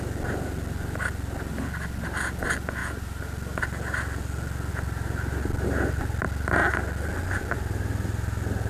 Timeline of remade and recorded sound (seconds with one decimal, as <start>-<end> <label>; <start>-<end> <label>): 0.0-2.8 remade; 2.8-4.7 recorded; 4.7-6.6 remade; 6.6-7.1 recorded; 7.1-8.7 remade